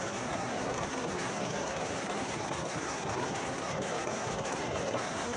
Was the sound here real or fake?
fake